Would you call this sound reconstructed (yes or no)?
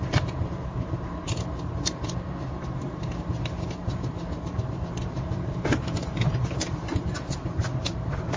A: yes